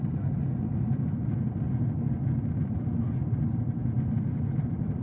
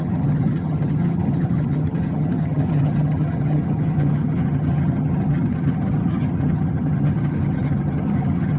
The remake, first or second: second